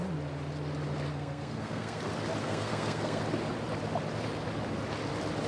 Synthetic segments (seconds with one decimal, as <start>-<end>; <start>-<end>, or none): 1.1-2.0; 2.4-3.2